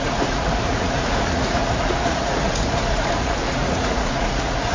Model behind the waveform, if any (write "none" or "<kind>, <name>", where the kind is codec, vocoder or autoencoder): vocoder, Vocos